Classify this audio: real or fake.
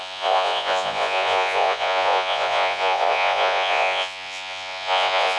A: fake